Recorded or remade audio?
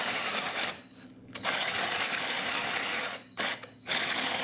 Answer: remade